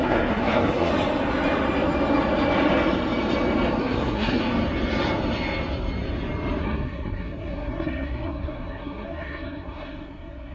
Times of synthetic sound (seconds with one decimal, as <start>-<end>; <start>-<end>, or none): 0.0-0.9; 3.8-4.4; 6.6-10.5